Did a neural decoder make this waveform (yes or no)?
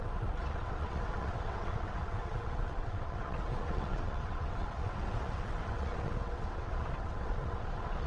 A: yes